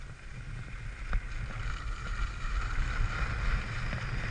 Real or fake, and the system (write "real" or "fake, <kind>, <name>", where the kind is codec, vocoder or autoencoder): real